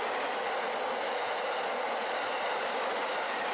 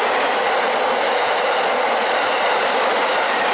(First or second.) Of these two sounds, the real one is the first